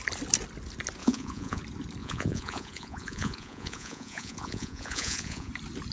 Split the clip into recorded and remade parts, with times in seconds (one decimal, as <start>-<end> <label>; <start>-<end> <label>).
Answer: 0.0-1.0 recorded; 1.0-1.6 remade; 1.6-2.0 recorded; 2.0-5.5 remade; 5.5-5.9 recorded